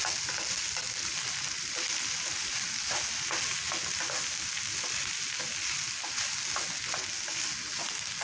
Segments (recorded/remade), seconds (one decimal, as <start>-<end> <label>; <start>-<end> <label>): 0.0-0.6 recorded; 0.6-1.7 remade; 1.7-8.2 recorded